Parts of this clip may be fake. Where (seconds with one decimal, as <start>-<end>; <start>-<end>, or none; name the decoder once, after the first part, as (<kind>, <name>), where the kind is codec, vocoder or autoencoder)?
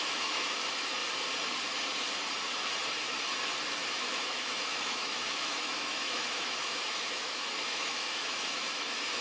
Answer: 0.0-1.0 (autoencoder, DAC-VAE); 3.9-9.2